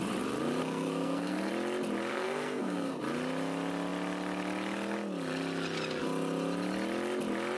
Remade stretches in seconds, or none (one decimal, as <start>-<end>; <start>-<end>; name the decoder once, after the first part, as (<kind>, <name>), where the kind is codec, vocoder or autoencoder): 0.6-1.5 (codec, SNAC); 2.1-3.0